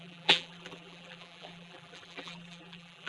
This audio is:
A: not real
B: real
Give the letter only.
A